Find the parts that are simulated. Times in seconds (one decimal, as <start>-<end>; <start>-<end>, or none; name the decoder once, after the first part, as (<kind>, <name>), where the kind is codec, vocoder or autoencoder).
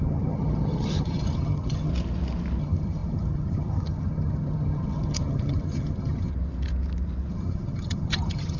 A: 0.0-1.9 (vocoder, HiFi-GAN); 2.6-6.3; 7.3-8.6